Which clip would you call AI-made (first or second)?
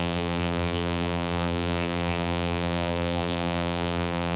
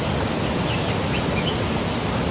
first